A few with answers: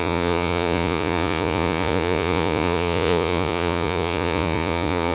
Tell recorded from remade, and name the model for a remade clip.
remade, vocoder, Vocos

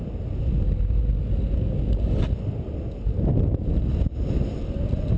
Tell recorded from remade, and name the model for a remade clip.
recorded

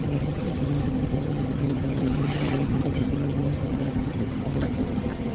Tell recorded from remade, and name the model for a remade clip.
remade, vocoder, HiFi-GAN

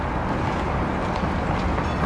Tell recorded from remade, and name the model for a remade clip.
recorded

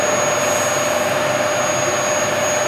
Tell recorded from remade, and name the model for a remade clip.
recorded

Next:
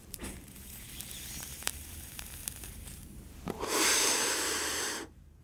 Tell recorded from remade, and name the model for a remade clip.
remade, vocoder, BigVGAN v2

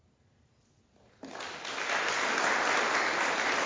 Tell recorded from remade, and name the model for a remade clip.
recorded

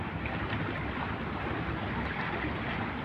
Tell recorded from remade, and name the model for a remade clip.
recorded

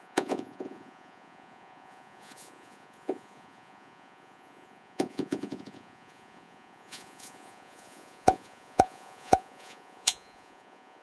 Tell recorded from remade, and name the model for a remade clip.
remade, vocoder, Vocos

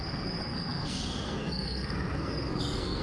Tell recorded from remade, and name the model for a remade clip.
remade, codec, SNAC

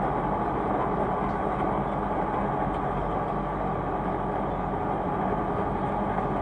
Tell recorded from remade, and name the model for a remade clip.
recorded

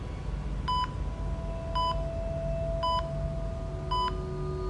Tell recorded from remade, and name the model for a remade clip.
recorded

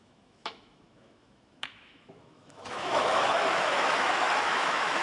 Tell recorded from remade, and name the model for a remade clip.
remade, autoencoder, DAC-VAE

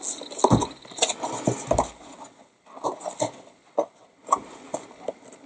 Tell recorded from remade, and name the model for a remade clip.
recorded